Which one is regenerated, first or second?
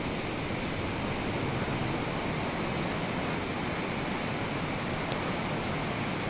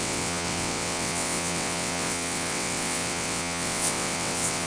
second